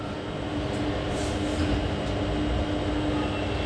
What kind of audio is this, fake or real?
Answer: real